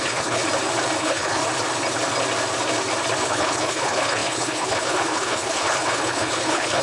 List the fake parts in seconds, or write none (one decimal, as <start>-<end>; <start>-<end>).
0.0-0.4; 1.0-1.4; 3.2-6.8